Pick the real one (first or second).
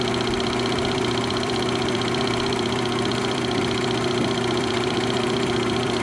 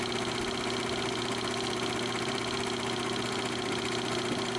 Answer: second